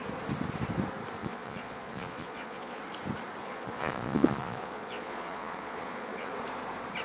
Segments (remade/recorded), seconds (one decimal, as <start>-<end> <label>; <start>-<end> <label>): 0.0-1.2 recorded; 1.2-2.8 remade; 2.8-3.4 recorded; 3.4-6.3 remade; 6.3-7.0 recorded